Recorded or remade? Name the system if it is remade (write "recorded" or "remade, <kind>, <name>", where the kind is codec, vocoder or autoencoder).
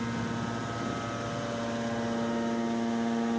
recorded